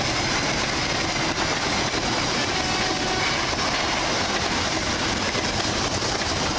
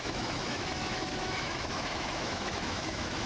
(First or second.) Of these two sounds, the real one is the first